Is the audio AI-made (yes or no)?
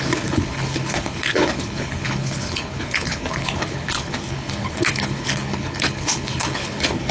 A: yes